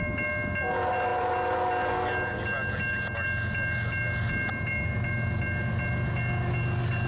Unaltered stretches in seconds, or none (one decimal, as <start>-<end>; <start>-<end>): 0.0-7.1